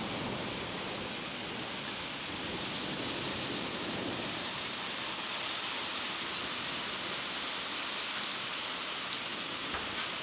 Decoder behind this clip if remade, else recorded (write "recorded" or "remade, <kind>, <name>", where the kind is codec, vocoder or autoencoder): recorded